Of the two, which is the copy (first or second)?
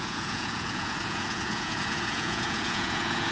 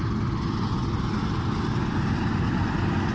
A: first